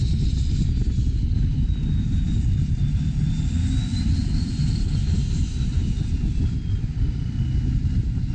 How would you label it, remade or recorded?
recorded